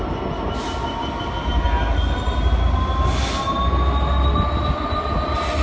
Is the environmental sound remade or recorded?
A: recorded